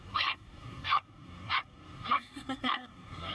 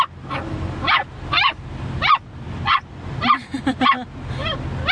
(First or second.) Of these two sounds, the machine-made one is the first